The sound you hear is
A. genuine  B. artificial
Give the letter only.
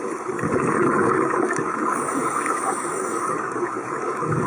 B